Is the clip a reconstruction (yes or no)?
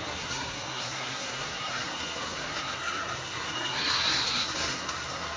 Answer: yes